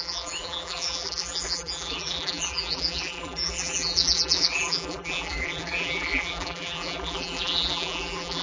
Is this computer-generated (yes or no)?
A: yes